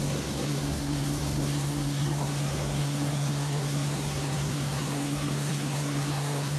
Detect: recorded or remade remade